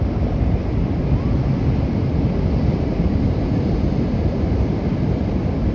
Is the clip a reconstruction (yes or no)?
no